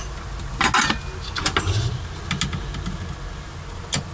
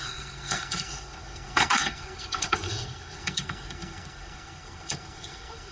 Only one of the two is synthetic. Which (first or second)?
second